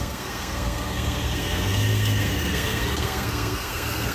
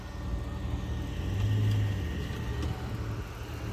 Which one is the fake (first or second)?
first